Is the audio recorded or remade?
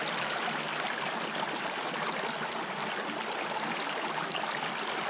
recorded